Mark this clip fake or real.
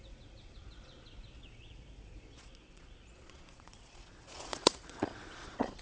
fake